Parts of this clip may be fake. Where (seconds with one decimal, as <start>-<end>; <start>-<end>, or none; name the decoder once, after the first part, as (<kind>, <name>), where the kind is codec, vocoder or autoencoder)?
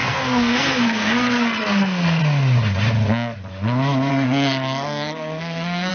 0.0-2.2 (codec, SNAC); 4.1-5.9